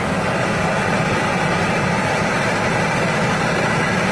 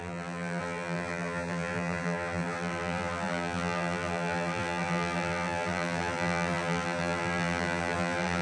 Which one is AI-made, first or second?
second